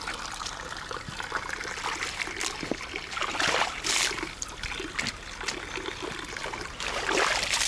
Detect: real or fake real